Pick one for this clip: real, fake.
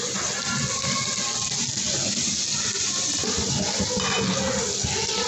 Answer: real